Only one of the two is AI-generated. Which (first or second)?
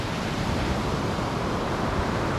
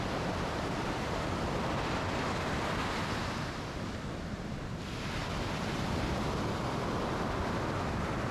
first